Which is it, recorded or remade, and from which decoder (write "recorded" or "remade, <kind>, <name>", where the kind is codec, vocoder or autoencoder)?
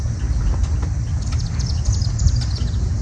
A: recorded